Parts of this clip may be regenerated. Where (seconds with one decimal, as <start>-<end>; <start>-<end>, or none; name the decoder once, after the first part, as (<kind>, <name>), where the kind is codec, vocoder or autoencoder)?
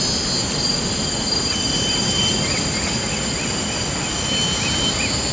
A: none